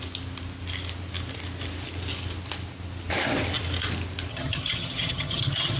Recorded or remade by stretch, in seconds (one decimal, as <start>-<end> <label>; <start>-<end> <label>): 0.0-4.3 recorded; 4.3-5.8 remade